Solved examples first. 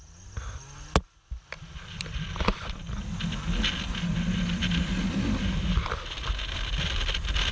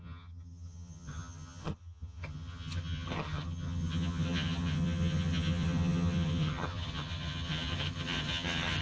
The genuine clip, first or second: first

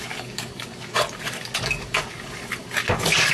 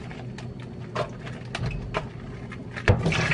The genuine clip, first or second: second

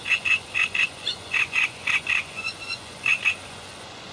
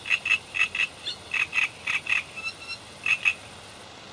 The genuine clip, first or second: second